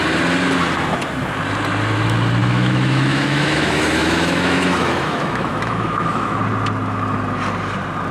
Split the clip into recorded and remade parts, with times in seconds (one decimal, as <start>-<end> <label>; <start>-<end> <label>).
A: 0.0-2.4 recorded; 2.4-6.4 remade; 6.4-8.1 recorded